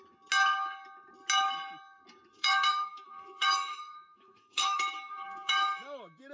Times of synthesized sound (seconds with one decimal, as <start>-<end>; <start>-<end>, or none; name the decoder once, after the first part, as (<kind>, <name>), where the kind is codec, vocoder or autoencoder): 2.3-6.3 (autoencoder, DAC-VAE)